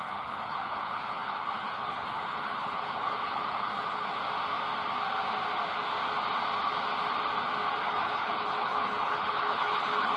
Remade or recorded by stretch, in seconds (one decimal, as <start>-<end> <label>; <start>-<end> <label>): 0.0-4.2 remade; 4.2-7.8 recorded; 7.8-10.2 remade